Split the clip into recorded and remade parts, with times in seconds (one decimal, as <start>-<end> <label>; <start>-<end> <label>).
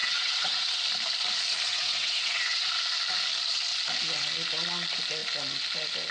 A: 0.0-0.8 remade; 0.8-1.7 recorded; 1.7-2.7 remade; 2.7-6.1 recorded